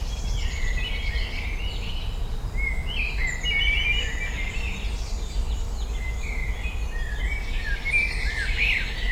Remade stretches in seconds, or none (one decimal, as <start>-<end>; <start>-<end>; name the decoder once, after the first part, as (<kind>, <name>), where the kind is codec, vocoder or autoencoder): none

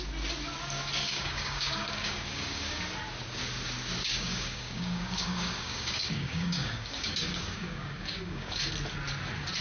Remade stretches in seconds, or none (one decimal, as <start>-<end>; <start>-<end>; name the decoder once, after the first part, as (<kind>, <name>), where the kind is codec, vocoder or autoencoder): 1.0-2.8 (codec, DAC); 4.1-8.6

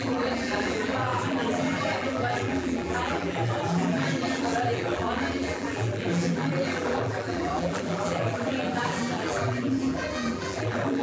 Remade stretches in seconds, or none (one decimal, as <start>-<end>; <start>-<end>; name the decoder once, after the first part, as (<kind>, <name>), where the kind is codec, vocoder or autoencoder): 0.0-11.0 (vocoder, BigVGAN v2)

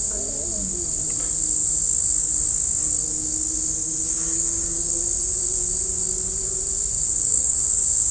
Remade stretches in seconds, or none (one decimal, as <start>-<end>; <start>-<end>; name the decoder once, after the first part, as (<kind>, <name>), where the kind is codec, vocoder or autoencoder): 3.8-4.9 (codec, DAC); 7.1-7.6

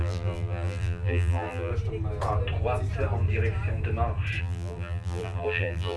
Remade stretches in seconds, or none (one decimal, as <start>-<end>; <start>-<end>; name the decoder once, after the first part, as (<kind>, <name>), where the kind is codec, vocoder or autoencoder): 0.0-1.7 (vocoder, BigVGAN v2); 4.4-6.0

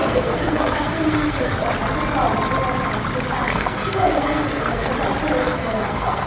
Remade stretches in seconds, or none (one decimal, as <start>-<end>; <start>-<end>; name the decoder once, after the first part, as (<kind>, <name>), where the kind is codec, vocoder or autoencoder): 0.0-1.5 (codec, SNAC); 3.5-4.9; 5.4-6.3

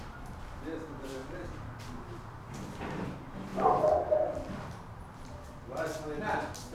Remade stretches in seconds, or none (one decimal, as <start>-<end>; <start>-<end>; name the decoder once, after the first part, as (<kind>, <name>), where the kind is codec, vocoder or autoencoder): none